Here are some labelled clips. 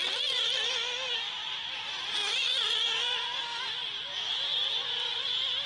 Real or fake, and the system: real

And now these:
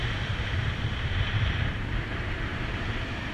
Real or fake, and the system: fake, vocoder, BigVGAN v2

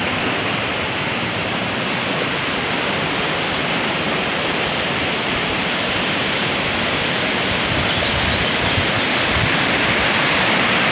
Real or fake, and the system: fake, vocoder, BigVGAN v2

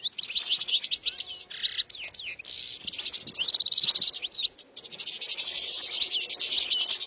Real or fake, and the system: real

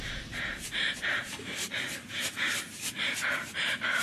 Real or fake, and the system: fake, vocoder, BigVGAN v2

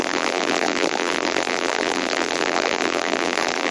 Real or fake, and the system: fake, vocoder, BigVGAN v2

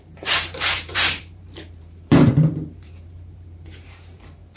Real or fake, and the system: fake, vocoder, BigVGAN v2